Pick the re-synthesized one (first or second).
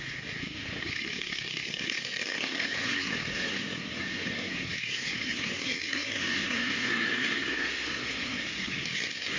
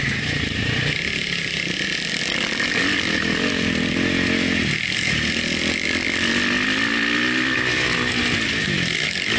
first